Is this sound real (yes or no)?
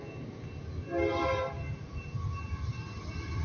yes